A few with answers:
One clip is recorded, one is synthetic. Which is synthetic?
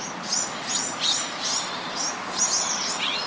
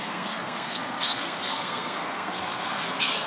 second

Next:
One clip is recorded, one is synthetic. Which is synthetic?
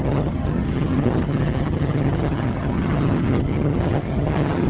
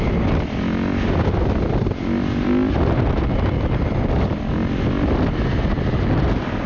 first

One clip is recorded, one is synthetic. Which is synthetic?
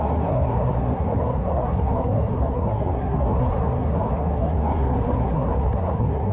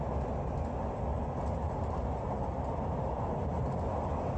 first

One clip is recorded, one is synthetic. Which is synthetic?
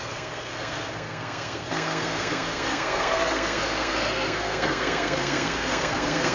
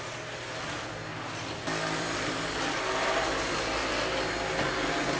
first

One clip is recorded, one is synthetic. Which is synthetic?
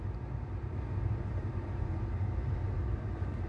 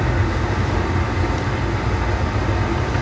first